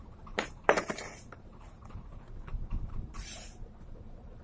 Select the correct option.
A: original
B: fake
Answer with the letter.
B